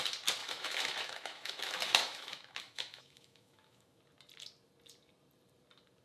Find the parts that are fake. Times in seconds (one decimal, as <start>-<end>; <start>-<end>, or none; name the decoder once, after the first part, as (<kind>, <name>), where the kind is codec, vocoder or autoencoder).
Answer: 0.4-4.0 (autoencoder, DAC-VAE)